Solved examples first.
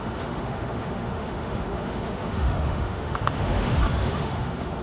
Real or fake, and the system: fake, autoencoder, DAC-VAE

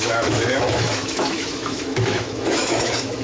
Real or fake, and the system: fake, autoencoder, DAC-VAE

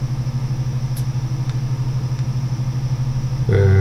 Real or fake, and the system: real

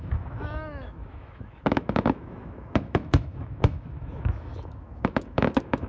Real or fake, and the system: fake, autoencoder, DAC-VAE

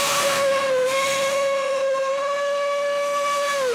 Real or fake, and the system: fake, autoencoder, DAC-VAE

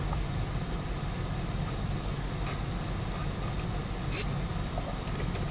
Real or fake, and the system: real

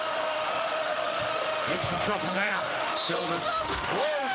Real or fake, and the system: fake, autoencoder, DAC-VAE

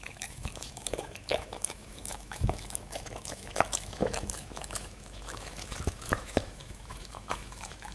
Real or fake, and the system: fake, autoencoder, DAC-VAE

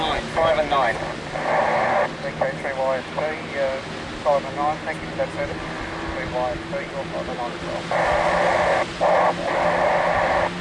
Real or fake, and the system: real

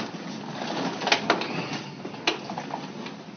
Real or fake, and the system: real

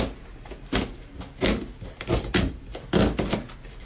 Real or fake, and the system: real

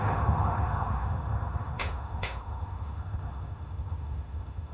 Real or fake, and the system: fake, autoencoder, DAC-VAE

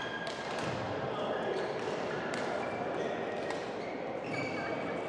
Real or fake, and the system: real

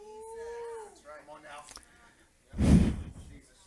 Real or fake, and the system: real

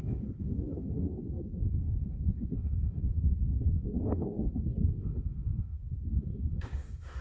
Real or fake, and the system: fake, autoencoder, DAC-VAE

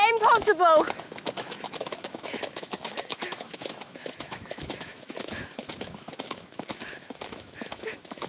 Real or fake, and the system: fake, autoencoder, DAC-VAE